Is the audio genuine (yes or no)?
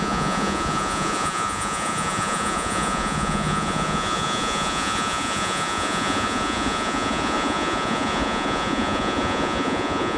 no